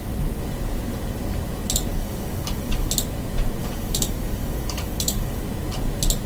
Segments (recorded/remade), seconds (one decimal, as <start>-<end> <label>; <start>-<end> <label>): 0.0-1.9 recorded; 1.9-2.9 remade; 2.9-3.6 recorded; 3.6-5.4 remade; 5.4-6.3 recorded